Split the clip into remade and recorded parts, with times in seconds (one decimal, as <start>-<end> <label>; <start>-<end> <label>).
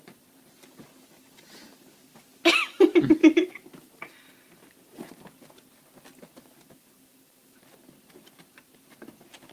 0.0-3.2 recorded; 3.2-3.7 remade; 3.7-9.5 recorded